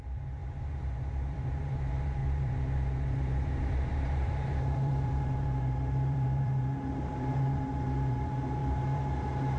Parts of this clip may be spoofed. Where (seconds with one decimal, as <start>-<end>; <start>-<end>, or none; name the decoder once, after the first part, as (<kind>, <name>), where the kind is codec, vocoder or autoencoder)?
0.0-9.6 (vocoder, BigVGAN v2)